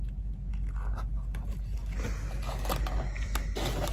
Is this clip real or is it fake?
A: real